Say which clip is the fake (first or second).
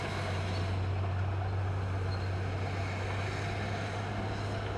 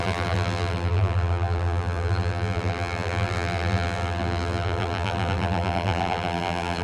second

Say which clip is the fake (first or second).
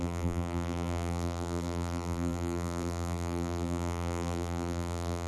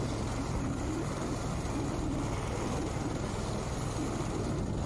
first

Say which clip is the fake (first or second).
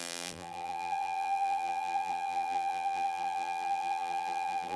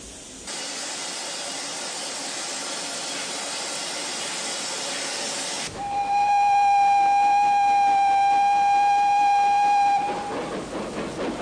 first